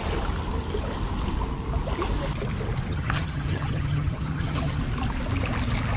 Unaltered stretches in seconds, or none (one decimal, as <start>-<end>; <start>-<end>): 0.0-2.9; 4.8-6.0